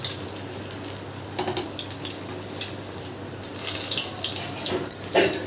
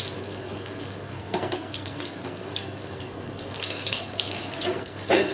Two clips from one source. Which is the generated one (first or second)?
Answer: second